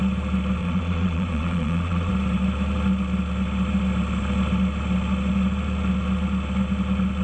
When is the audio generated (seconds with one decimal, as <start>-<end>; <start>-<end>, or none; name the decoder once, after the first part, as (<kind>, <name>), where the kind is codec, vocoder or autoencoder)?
0.6-2.1 (vocoder, Vocos)